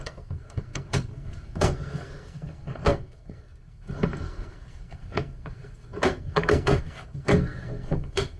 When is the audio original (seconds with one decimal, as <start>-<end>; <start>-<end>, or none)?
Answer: none